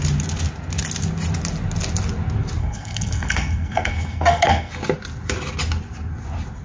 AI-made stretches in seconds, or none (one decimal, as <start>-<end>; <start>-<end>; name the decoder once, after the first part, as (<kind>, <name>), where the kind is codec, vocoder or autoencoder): 2.6-4.7 (codec, SNAC)